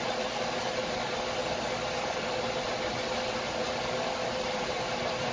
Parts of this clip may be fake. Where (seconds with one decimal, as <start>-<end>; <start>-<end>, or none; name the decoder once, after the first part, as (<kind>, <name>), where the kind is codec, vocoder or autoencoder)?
none